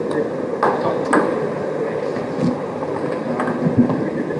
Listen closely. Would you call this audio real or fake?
real